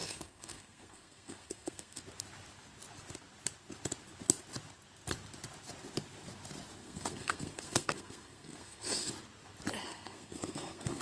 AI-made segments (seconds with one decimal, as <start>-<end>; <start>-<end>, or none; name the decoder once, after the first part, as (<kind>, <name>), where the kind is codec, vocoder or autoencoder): 0.0-2.0 (codec, SNAC); 6.8-9.1; 9.8-11.0